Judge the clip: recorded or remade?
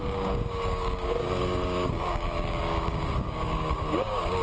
remade